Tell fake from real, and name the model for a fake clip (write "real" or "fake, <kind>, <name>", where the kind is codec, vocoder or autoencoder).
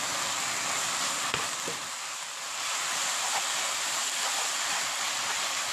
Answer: real